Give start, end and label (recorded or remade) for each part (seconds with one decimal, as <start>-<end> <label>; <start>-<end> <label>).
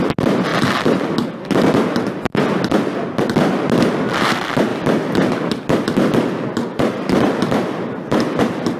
0.0-4.7 recorded; 4.7-8.4 remade; 8.4-8.8 recorded